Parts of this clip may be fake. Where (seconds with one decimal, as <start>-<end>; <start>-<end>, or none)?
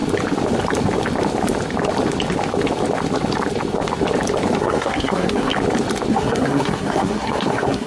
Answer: 4.6-5.5; 6.1-7.9